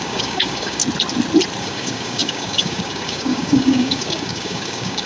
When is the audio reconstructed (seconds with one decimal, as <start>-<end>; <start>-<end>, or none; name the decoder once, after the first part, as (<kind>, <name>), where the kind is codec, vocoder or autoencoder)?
0.0-0.8 (codec, DAC); 1.6-5.1